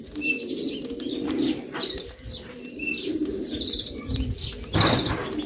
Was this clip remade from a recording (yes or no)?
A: no